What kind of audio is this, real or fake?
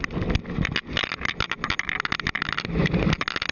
real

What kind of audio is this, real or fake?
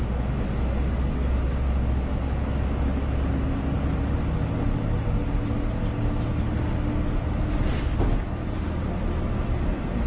real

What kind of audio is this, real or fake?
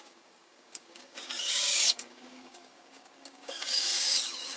fake